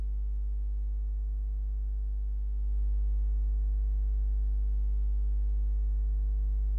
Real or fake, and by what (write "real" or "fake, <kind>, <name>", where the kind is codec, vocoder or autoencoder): real